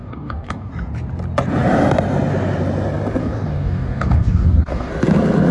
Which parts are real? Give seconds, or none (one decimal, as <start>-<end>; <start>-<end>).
0.7-3.2; 4.9-5.5